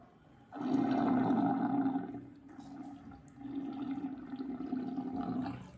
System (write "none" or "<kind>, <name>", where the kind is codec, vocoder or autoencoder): none